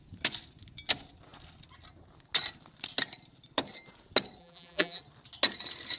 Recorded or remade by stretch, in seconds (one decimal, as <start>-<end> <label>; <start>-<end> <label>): 0.0-4.4 recorded; 4.4-5.0 remade; 5.0-6.0 recorded